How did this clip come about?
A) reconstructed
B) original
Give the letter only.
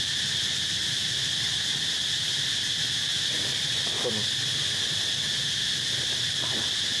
B